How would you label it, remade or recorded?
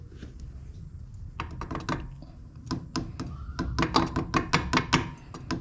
recorded